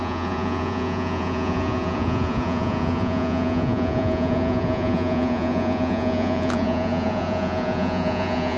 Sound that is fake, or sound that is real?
fake